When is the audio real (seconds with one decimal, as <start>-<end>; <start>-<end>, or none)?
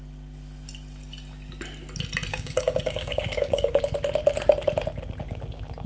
0.0-2.3; 3.8-5.9